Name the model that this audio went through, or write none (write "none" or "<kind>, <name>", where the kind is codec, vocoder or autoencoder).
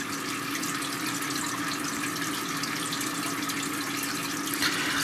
none